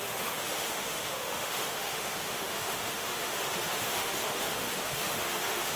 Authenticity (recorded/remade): remade